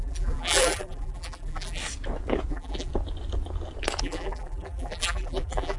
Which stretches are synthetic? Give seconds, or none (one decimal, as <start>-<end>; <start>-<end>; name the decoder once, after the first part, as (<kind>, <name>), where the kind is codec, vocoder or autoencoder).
0.0-1.8 (vocoder, BigVGAN v2); 2.5-2.9; 4.0-5.8